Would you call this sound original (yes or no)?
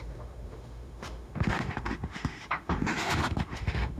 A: no